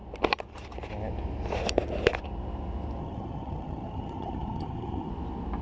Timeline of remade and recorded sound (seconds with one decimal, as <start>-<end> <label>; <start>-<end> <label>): 0.0-3.0 recorded; 3.0-5.1 remade; 5.1-5.6 recorded